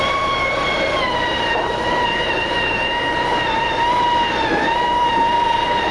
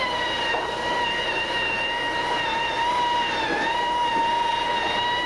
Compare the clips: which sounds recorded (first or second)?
second